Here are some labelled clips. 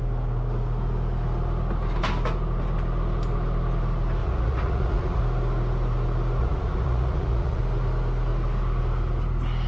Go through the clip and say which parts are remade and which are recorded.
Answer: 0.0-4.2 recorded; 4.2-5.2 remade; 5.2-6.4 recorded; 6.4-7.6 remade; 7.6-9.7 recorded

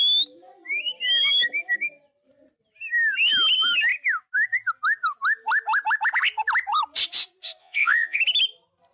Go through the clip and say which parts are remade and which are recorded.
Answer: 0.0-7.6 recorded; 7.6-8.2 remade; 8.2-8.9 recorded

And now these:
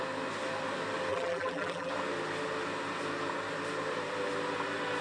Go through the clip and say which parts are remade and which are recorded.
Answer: 0.0-1.1 recorded; 1.1-1.9 remade; 1.9-5.0 recorded